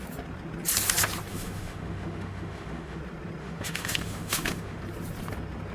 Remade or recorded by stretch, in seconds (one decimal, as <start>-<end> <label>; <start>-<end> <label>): 0.0-1.3 recorded; 1.3-3.0 remade; 3.0-3.4 recorded; 3.4-4.8 remade; 4.8-5.7 recorded